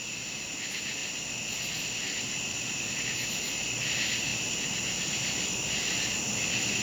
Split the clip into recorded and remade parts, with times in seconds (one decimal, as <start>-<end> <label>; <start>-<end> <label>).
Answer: 0.0-6.8 recorded